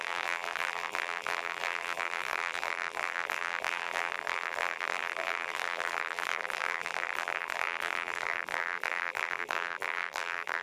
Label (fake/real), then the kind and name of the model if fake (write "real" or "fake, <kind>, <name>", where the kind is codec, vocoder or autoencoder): fake, vocoder, BigVGAN v2